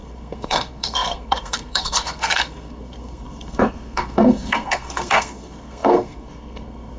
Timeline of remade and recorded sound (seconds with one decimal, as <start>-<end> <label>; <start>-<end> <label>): 0.0-7.0 remade